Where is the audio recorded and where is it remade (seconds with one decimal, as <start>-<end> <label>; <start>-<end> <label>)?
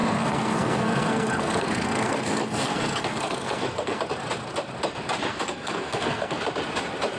0.0-4.0 remade; 4.0-5.3 recorded; 5.3-6.4 remade; 6.4-7.2 recorded